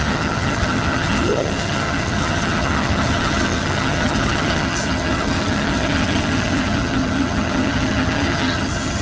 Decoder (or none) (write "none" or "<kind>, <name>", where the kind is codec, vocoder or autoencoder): vocoder, HiFi-GAN